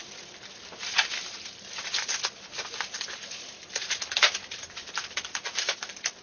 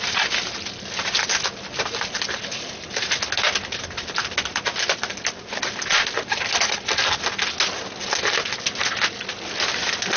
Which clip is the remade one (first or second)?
first